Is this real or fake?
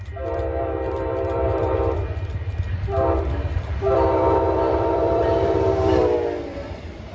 fake